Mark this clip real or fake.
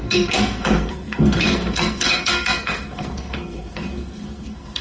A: fake